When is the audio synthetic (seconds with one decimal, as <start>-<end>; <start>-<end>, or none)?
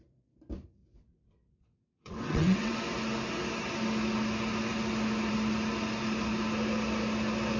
0.8-2.8